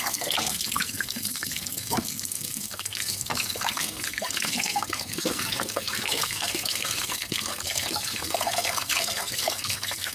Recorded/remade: remade